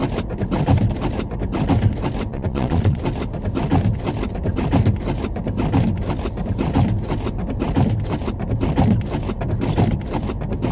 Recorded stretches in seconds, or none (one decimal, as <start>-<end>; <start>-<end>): 0.0-2.3; 3.0-10.7